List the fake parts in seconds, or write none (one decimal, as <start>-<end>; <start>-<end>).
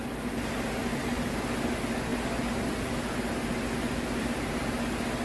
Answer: 0.8-1.4